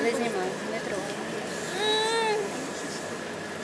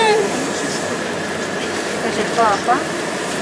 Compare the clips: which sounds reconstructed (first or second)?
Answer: second